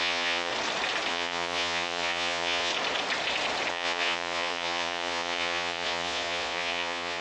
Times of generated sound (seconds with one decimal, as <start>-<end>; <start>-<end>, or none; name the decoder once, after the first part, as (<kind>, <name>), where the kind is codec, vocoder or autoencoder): 0.0-0.5 (vocoder, Vocos); 1.1-2.7; 3.7-7.2